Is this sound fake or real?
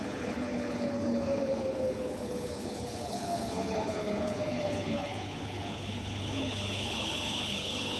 fake